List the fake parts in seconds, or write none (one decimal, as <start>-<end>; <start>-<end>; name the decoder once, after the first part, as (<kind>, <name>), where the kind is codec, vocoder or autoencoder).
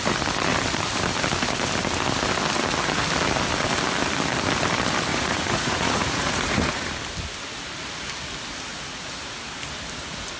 5.1-6.9 (vocoder, Vocos); 8.7-9.4